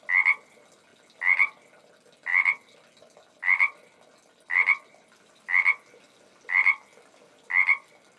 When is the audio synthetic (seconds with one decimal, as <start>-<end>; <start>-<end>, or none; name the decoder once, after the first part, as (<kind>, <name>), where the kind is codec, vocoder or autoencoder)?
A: none